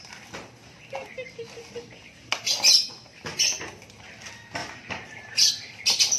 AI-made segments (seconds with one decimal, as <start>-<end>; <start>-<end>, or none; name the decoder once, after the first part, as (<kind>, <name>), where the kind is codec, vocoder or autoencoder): 1.0-2.5 (vocoder, BigVGAN v2); 4.6-5.5